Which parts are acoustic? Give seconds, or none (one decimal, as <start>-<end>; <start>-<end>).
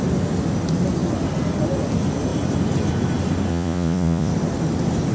0.0-3.5; 4.3-5.1